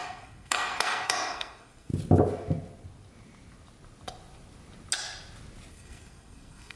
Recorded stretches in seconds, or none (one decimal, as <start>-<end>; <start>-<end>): 1.9-5.7